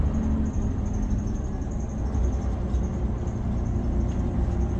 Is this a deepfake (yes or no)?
no